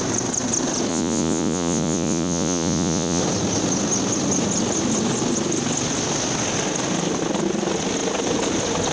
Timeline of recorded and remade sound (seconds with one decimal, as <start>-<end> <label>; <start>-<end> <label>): 0.0-0.9 recorded; 0.9-3.2 remade; 3.2-8.9 recorded